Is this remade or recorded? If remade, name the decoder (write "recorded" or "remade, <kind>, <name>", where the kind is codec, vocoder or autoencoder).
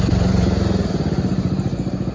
recorded